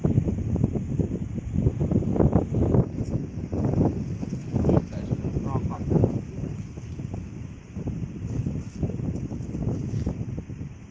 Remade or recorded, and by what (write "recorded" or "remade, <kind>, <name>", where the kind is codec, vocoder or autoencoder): recorded